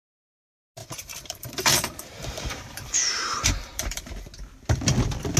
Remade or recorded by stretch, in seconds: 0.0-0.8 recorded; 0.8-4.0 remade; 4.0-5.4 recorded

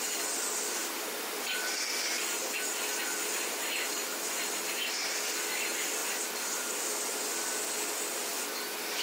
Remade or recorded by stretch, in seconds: 0.0-0.8 recorded; 0.8-1.9 remade; 1.9-6.0 recorded; 6.0-6.7 remade; 6.7-9.0 recorded

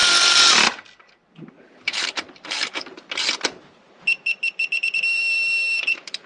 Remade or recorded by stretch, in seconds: 0.0-1.6 recorded; 1.6-6.3 remade

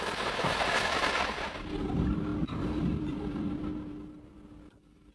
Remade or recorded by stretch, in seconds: 0.0-2.3 remade; 2.3-2.8 recorded; 2.8-3.7 remade; 3.7-4.2 recorded; 4.2-5.1 remade

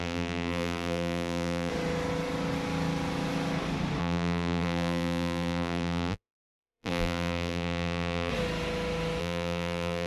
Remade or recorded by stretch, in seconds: 0.0-1.7 remade; 1.7-4.0 recorded; 4.0-8.3 remade; 8.3-9.2 recorded; 9.2-10.1 remade

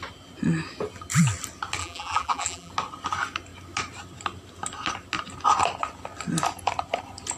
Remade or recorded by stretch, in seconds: 0.0-1.8 recorded; 1.8-2.7 remade; 2.7-7.4 recorded